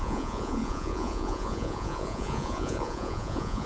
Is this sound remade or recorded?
remade